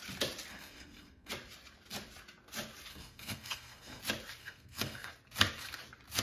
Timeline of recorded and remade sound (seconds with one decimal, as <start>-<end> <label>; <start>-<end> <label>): 0.0-0.5 recorded; 0.5-1.3 remade; 1.3-2.9 recorded; 2.9-4.0 remade; 4.0-4.4 recorded; 4.4-5.1 remade; 5.1-6.2 recorded

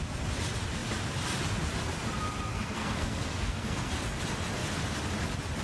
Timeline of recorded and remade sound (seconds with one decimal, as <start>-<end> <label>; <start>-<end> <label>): 0.0-2.5 recorded; 2.5-3.9 remade; 3.9-5.6 recorded

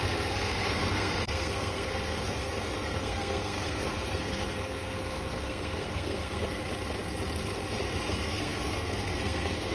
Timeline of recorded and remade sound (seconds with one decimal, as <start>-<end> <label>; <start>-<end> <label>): 0.0-6.6 remade; 6.6-8.1 recorded; 8.1-9.7 remade

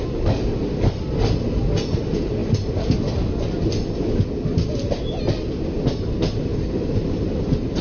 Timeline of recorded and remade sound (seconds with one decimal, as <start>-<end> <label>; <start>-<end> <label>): 0.0-7.8 recorded

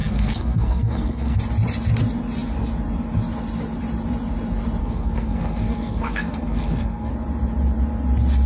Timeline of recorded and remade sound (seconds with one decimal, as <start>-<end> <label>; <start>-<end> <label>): 0.0-1.4 remade; 1.4-4.8 recorded; 4.8-7.1 remade; 7.1-8.5 recorded

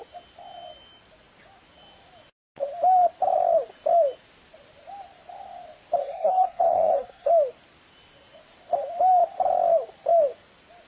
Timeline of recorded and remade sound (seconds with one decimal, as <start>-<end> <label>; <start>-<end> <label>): 0.0-6.0 recorded; 6.0-7.3 remade; 7.3-10.9 recorded

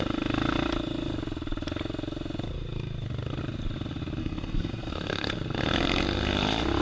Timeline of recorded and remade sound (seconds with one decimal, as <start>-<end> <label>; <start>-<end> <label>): 0.0-4.2 recorded; 4.2-5.3 remade; 5.3-6.8 recorded